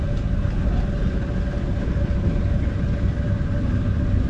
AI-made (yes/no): no